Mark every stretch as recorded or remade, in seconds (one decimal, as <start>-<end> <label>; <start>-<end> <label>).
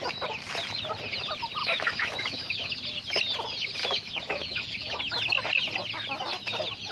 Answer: 0.0-1.6 recorded; 1.6-2.7 remade; 2.7-3.8 recorded; 3.8-5.0 remade; 5.0-6.9 recorded